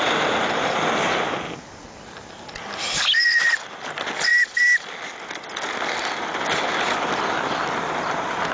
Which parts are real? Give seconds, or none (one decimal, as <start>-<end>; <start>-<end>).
0.0-8.5